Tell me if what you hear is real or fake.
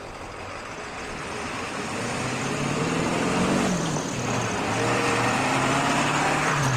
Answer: fake